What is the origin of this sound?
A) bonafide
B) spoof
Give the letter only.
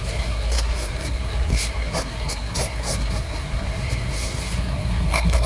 B